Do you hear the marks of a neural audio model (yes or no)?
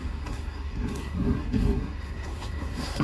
yes